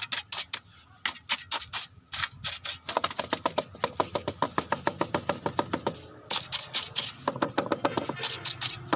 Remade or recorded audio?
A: recorded